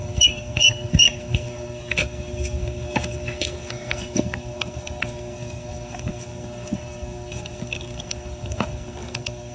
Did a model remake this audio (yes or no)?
yes